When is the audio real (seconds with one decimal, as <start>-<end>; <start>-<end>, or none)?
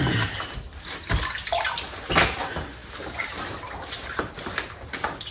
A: 0.0-5.3